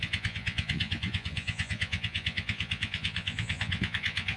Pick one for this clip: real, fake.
fake